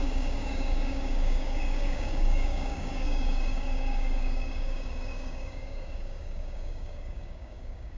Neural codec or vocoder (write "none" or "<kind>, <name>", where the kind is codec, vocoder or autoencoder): codec, DAC